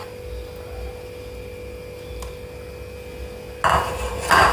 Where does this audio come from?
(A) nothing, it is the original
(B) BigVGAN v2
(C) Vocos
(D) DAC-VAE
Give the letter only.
A